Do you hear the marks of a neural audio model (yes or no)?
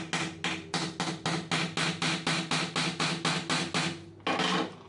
no